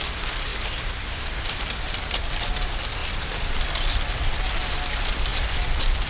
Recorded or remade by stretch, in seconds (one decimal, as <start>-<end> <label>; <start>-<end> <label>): 0.0-0.5 recorded; 0.5-2.2 remade; 2.2-3.0 recorded; 3.0-3.6 remade; 3.6-5.3 recorded; 5.3-6.1 remade